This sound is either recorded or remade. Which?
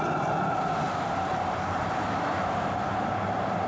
recorded